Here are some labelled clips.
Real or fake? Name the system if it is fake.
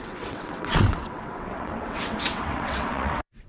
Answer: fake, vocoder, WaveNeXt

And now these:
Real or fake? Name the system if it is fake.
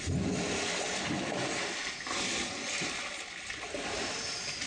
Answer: real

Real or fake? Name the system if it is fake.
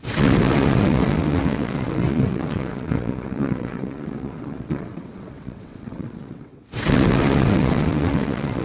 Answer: fake, vocoder, WaveNeXt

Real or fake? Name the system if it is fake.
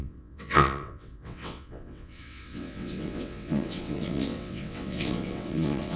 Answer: fake, vocoder, WaveNeXt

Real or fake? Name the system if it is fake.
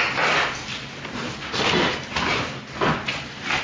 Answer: real